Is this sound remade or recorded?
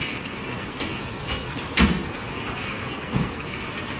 remade